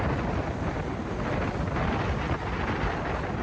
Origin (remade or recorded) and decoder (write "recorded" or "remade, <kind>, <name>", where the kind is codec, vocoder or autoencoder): recorded